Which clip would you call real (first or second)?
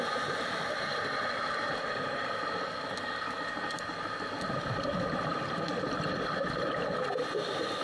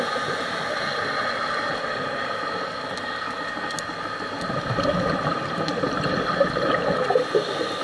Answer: second